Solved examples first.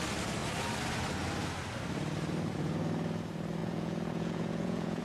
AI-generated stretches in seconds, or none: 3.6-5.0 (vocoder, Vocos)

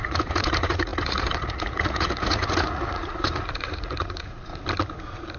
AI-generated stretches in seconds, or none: 0.0-4.5 (vocoder, Vocos)

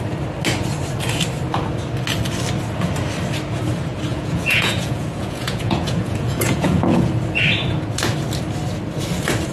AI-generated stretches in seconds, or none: 4.1-7.1 (vocoder, Vocos)

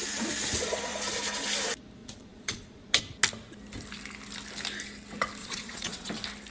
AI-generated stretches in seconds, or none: 2.0-3.0 (vocoder, Vocos); 5.4-6.1